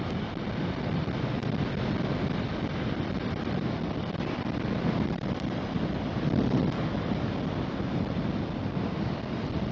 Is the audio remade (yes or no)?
no